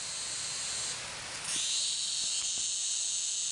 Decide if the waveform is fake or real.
real